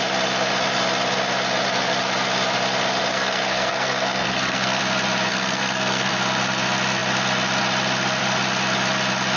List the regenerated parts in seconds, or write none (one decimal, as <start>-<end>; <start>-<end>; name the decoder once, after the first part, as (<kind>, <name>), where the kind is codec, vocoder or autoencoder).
3.1-4.8 (codec, SNAC); 5.3-6.1